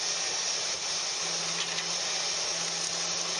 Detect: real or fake real